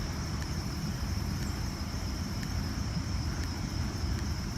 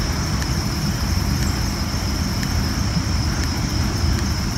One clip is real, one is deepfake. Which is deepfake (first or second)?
first